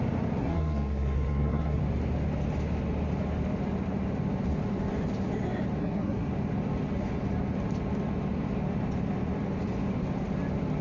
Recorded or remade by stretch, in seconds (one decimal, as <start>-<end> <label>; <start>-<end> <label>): 0.0-0.4 recorded; 0.4-1.8 remade; 1.8-5.8 recorded; 5.8-6.3 remade; 6.3-10.8 recorded